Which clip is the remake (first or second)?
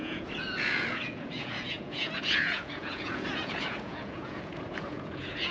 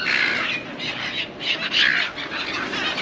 first